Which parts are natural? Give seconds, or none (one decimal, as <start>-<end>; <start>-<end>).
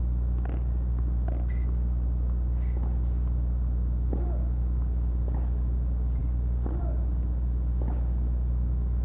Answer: 0.0-9.0